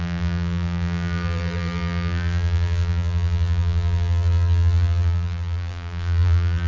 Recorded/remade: remade